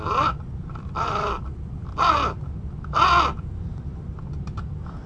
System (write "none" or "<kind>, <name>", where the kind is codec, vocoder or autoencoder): none